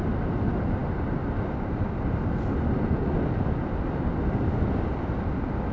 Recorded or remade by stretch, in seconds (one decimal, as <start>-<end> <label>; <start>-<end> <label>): 0.0-5.7 recorded

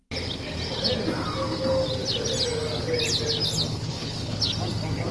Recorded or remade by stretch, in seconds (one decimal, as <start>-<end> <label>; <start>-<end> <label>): 0.0-3.7 recorded; 3.7-4.4 remade; 4.4-5.1 recorded

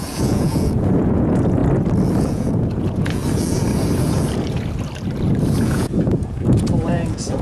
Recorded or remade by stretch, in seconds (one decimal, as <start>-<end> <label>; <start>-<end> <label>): 0.0-1.6 remade; 1.6-2.2 recorded; 2.2-3.2 remade; 3.2-5.6 recorded; 5.6-7.4 remade

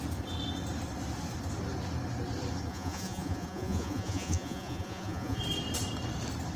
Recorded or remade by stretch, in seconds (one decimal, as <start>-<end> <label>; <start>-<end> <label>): 0.0-2.7 recorded; 2.7-5.4 remade; 5.4-6.6 recorded

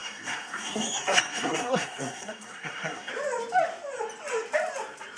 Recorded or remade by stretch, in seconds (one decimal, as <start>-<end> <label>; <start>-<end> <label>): 0.0-3.1 remade; 3.1-5.2 recorded

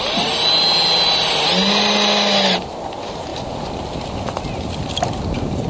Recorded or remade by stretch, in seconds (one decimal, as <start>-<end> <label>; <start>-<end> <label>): 0.0-5.7 recorded

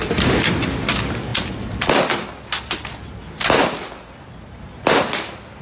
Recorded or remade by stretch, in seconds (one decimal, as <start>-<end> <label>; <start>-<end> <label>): 0.0-5.6 recorded